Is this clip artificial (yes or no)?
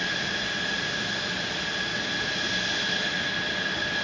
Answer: no